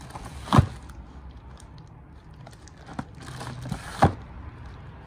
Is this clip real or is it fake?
real